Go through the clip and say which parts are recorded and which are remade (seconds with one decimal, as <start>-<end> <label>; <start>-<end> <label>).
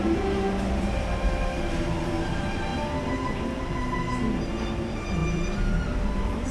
0.0-2.7 remade; 2.7-4.6 recorded; 4.6-6.5 remade